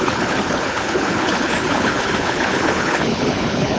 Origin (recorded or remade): remade